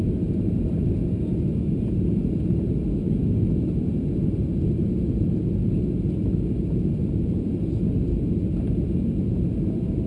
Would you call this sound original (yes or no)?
yes